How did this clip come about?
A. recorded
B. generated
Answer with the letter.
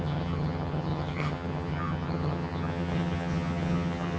B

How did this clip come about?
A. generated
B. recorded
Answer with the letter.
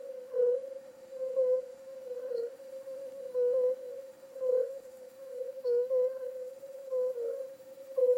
A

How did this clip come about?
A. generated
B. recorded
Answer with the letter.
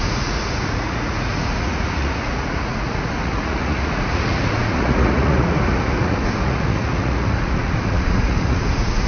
A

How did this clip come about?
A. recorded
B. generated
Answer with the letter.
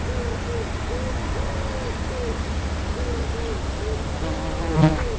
A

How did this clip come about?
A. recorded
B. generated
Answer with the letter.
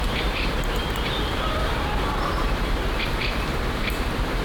B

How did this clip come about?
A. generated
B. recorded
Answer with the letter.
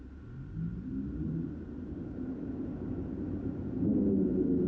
B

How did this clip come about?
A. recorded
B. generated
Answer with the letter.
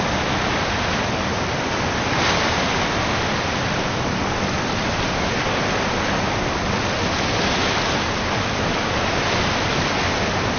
A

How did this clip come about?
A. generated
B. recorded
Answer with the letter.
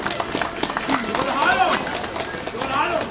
A